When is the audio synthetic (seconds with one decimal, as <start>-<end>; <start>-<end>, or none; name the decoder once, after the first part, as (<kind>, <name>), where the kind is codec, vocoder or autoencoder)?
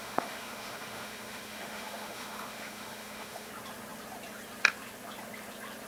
0.0-3.5 (autoencoder, DAC-VAE)